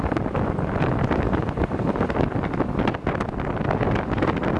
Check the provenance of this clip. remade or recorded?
remade